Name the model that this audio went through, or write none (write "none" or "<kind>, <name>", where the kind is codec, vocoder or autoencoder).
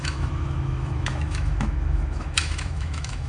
autoencoder, DAC-VAE